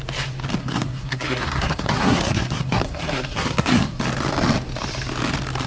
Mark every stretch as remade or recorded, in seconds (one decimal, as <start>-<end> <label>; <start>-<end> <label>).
0.0-0.6 recorded; 0.6-4.0 remade; 4.0-5.7 recorded